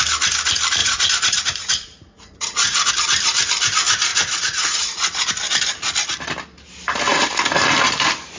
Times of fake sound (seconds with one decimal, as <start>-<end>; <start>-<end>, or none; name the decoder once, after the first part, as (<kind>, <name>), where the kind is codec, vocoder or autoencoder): 0.8-2.9 (vocoder, Vocos); 4.1-5.3